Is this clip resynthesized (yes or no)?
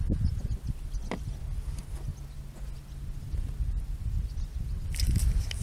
no